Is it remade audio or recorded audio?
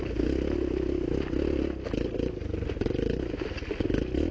recorded